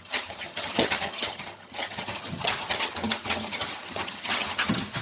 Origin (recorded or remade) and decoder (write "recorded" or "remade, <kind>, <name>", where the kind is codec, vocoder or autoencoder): remade, vocoder, HiFi-GAN